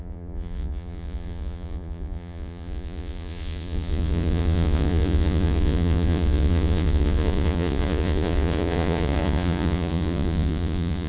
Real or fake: fake